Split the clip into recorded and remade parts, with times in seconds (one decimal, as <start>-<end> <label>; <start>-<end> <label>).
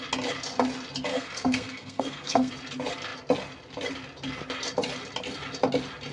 0.0-1.1 recorded; 1.1-2.5 remade; 2.5-6.1 recorded